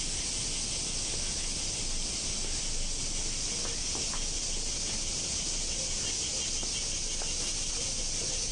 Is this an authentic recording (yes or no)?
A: yes